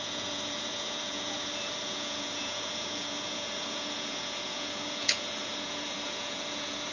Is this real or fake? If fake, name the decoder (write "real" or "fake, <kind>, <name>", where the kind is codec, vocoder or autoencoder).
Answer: fake, vocoder, Vocos